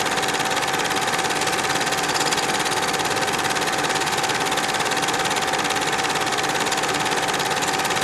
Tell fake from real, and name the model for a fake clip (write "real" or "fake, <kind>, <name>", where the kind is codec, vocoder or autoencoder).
real